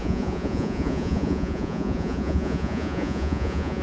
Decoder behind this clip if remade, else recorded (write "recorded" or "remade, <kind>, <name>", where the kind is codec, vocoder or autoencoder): remade, vocoder, Vocos